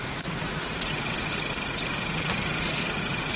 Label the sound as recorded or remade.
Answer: remade